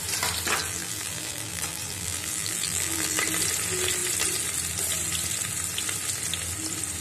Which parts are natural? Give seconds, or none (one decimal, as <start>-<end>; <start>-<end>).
0.0-0.6; 3.2-7.0